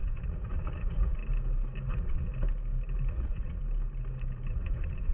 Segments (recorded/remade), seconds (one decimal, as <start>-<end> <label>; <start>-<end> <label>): 0.0-1.2 remade; 1.2-1.9 recorded; 1.9-2.3 remade; 2.3-3.1 recorded; 3.1-3.6 remade; 3.6-4.5 recorded; 4.5-5.1 remade